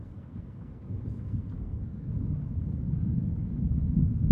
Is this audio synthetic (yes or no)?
yes